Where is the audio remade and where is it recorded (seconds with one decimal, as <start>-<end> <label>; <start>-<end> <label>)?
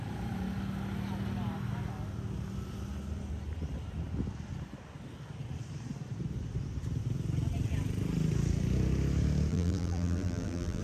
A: 0.0-9.5 recorded; 9.5-10.8 remade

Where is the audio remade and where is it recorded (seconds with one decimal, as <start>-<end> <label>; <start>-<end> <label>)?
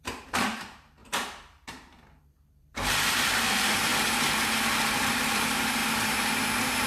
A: 0.0-3.9 remade; 3.9-5.0 recorded; 5.0-6.9 remade